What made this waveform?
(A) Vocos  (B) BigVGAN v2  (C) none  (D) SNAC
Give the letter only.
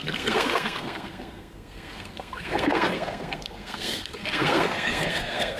D